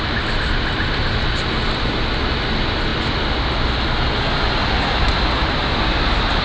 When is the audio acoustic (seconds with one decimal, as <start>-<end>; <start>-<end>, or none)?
0.0-6.4